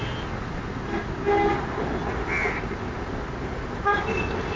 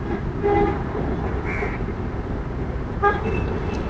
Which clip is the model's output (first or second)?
second